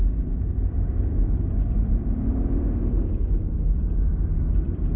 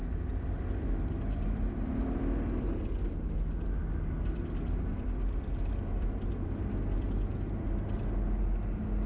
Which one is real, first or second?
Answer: second